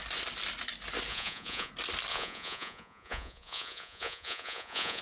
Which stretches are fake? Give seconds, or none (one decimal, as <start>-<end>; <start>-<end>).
1.1-1.7; 2.1-5.0